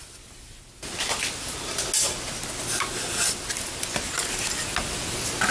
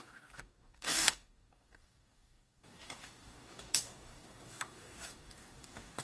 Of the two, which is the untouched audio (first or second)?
first